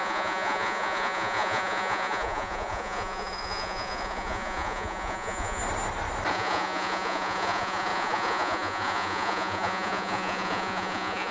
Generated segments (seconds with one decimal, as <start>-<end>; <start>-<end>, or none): 0.0-5.6; 6.3-11.3